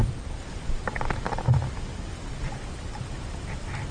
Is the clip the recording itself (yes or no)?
yes